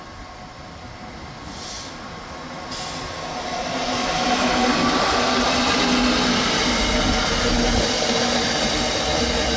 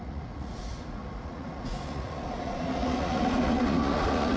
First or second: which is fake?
second